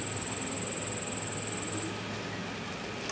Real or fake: real